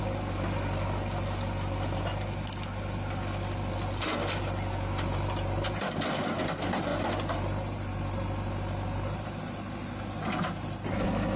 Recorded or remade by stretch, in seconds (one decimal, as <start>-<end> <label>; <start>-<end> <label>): 0.0-11.4 recorded